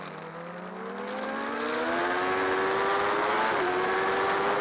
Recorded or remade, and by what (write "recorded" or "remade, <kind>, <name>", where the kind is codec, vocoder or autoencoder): recorded